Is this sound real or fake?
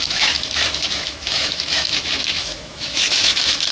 fake